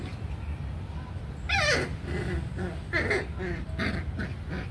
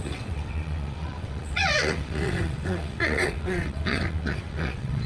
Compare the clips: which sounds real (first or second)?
first